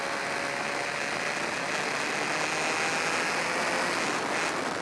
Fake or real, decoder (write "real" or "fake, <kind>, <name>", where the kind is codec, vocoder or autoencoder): real